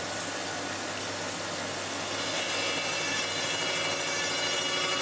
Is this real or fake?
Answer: real